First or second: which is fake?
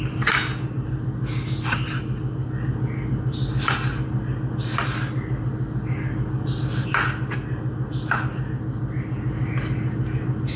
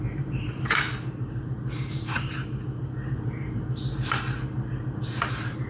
second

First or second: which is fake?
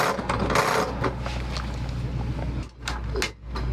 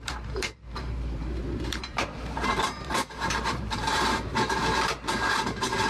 second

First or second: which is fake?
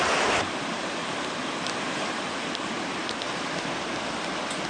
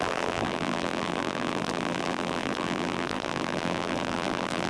second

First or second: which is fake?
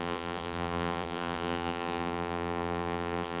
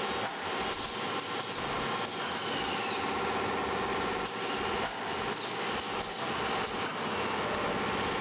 first